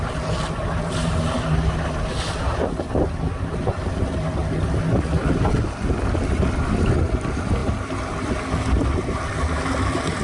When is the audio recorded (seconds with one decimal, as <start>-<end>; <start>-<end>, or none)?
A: 0.0-10.2